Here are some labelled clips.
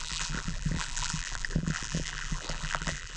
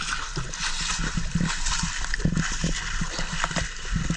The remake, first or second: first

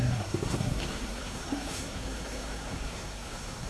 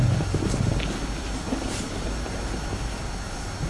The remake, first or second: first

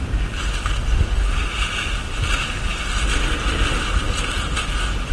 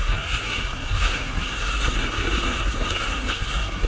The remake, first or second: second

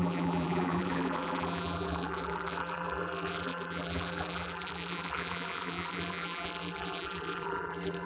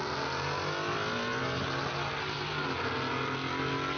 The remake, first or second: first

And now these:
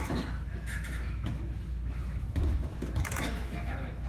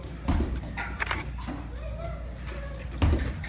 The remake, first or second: first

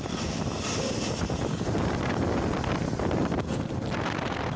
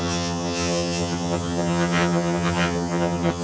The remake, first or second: second